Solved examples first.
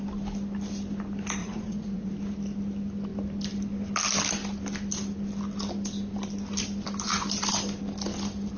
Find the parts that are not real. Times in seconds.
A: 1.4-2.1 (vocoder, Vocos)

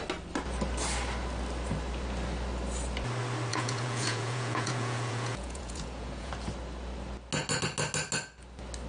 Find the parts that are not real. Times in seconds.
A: 3.5-6.3 (vocoder, Vocos)

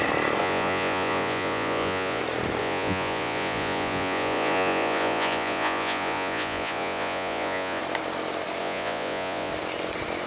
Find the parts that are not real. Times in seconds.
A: 0.4-2.2 (vocoder, Vocos); 2.6-7.8; 8.6-9.5

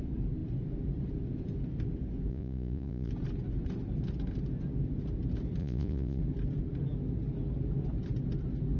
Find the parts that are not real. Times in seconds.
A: 2.3-3.1 (vocoder, Vocos); 5.6-6.2

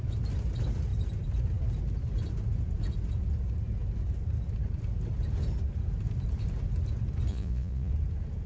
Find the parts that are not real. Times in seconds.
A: 7.3-7.9 (vocoder, Vocos)

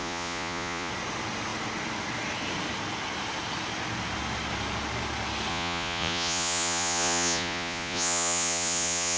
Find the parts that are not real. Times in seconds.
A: 0.0-0.9 (vocoder, Vocos); 5.5-9.2